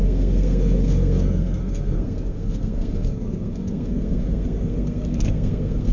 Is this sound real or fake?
fake